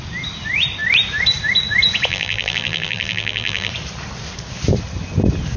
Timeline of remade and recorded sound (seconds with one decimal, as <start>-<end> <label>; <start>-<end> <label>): 0.0-2.1 recorded; 2.1-3.7 remade; 3.7-5.6 recorded